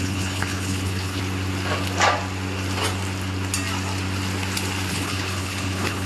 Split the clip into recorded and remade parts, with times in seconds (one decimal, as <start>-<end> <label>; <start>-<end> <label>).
0.0-1.2 remade; 1.2-4.9 recorded; 4.9-6.1 remade